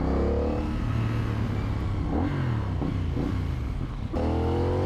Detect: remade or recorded recorded